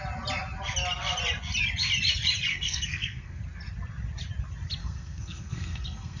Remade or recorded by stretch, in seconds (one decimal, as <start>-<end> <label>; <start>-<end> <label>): 0.0-2.5 recorded; 2.5-3.4 remade; 3.4-4.8 recorded; 4.8-6.2 remade